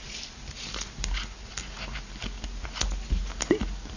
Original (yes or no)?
yes